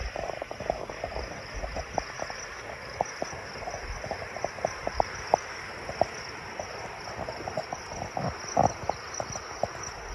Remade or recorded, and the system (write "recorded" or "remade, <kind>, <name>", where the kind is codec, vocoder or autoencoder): recorded